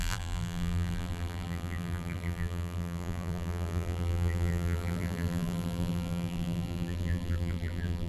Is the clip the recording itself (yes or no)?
no